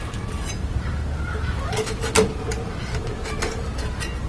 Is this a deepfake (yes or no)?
no